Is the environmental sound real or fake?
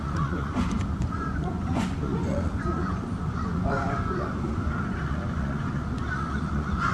fake